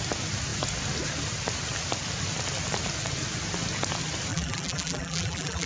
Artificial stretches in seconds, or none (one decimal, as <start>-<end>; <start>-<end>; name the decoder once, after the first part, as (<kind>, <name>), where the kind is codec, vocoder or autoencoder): 4.3-5.7 (vocoder, BigVGAN v2)